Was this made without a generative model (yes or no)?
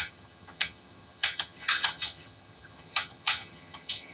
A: no